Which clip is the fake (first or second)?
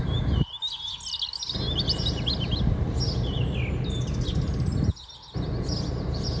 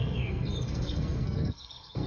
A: second